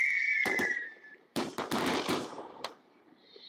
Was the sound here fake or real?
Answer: fake